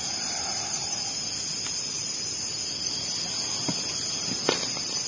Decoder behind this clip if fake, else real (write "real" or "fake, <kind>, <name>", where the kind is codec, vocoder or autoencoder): real